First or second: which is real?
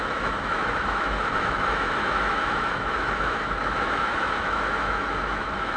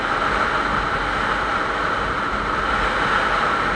second